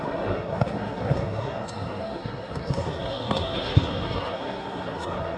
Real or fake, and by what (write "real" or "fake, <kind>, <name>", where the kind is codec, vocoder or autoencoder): fake, codec, SNAC